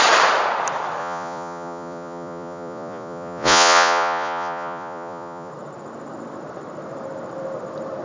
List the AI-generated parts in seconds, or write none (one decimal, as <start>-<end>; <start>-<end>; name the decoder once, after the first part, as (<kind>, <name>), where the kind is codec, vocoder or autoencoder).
1.0-5.5 (vocoder, Vocos)